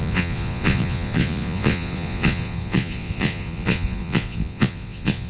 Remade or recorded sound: remade